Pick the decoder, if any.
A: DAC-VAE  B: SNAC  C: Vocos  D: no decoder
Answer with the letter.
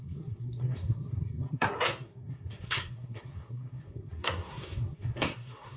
B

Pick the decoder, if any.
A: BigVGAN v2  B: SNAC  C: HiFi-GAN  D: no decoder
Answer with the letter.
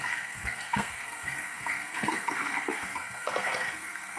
B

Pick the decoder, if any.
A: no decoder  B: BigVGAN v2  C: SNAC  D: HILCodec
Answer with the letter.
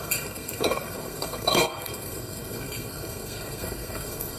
C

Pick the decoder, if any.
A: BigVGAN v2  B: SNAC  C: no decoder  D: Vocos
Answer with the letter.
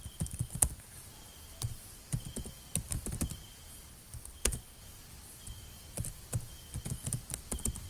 C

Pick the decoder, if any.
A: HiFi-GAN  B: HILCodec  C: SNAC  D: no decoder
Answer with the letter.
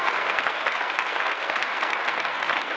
C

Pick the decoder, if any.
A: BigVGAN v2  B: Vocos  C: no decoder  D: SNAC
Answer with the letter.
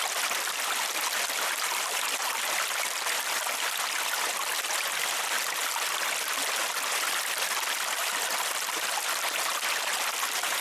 C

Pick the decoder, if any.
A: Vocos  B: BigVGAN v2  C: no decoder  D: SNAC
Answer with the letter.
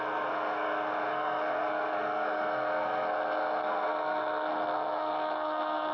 D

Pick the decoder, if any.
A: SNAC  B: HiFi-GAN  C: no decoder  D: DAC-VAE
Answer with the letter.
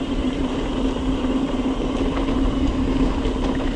C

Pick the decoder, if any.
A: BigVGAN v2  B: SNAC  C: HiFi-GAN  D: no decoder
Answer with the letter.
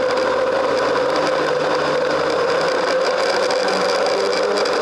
D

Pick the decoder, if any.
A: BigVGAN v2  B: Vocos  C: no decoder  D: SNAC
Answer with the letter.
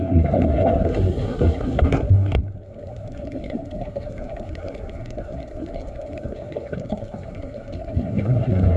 D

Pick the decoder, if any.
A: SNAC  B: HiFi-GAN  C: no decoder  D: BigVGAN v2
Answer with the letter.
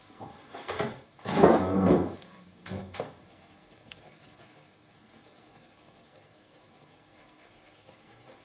A